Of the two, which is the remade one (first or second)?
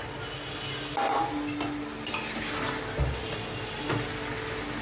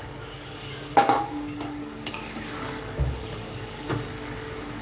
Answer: second